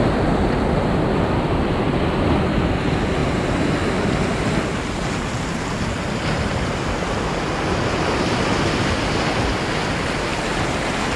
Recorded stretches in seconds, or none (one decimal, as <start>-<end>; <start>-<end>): 0.0-11.2